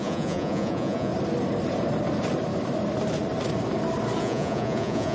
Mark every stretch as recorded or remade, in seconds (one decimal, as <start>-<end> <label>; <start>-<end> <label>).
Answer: 0.0-1.1 remade; 1.1-4.2 recorded; 4.2-5.1 remade